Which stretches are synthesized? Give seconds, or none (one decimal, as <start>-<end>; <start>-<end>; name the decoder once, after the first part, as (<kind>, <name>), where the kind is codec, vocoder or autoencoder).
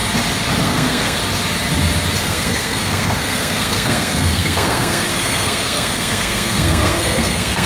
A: 0.6-1.2 (codec, SNAC); 2.2-7.7